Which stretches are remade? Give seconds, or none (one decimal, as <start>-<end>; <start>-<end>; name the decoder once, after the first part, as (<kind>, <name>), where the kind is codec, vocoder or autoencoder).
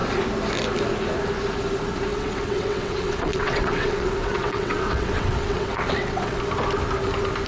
2.1-6.4 (vocoder, WaveNeXt)